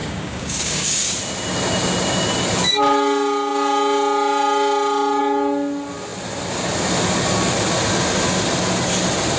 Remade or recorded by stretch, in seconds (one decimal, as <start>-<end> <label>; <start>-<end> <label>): 0.0-1.1 remade; 1.1-9.4 recorded